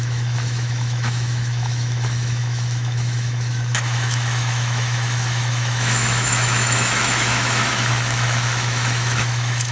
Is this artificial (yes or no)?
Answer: yes